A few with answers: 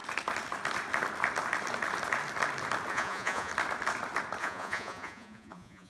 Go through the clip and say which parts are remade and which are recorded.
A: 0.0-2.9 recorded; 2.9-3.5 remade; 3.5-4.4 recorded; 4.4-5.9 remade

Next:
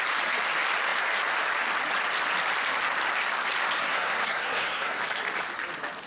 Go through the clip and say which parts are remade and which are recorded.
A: 0.0-3.8 recorded; 3.8-5.0 remade; 5.0-6.1 recorded

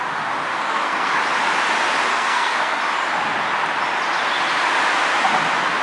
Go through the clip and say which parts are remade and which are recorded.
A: 0.0-0.5 recorded; 0.5-1.2 remade; 1.2-2.1 recorded; 2.1-2.8 remade; 2.8-5.8 recorded

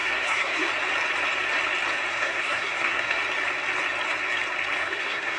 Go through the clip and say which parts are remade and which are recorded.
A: 0.0-0.7 remade; 0.7-2.1 recorded; 2.1-3.2 remade; 3.2-4.8 recorded; 4.8-5.4 remade

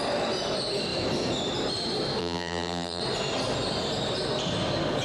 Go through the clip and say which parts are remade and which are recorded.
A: 0.0-2.2 recorded; 2.2-3.0 remade; 3.0-5.0 recorded

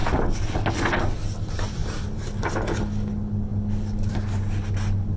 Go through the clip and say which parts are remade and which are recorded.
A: 0.0-1.8 recorded; 1.8-2.8 remade; 2.8-5.2 recorded

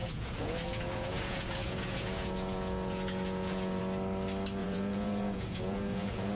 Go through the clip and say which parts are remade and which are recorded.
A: 0.0-3.8 remade; 3.8-4.6 recorded; 4.6-6.3 remade

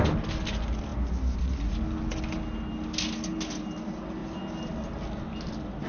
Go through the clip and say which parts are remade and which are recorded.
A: 0.0-5.9 recorded